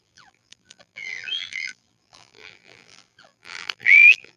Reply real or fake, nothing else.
fake